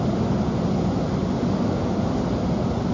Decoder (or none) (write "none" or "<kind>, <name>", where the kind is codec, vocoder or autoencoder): none